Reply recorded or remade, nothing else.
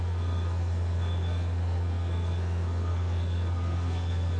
remade